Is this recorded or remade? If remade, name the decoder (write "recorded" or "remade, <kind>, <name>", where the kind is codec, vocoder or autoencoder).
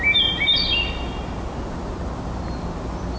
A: recorded